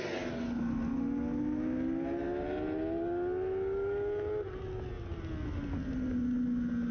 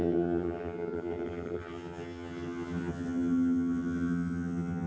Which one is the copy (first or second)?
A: second